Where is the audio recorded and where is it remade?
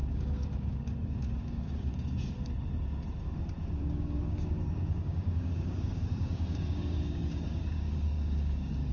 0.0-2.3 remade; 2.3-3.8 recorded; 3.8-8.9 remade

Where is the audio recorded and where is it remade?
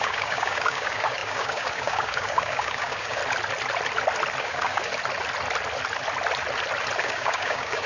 0.0-3.2 remade; 3.2-4.4 recorded; 4.4-4.9 remade; 4.9-7.0 recorded; 7.0-7.9 remade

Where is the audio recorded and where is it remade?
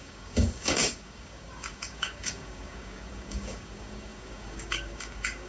0.0-5.5 remade